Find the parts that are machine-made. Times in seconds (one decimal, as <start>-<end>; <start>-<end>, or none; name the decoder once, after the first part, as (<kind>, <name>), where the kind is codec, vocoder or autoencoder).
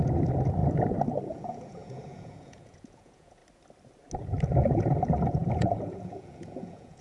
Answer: 0.0-0.6 (vocoder, Vocos); 1.3-3.4; 4.7-7.0